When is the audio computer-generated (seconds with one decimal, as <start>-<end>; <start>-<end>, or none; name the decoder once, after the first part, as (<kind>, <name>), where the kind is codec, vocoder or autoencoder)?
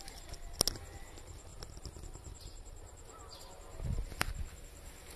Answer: none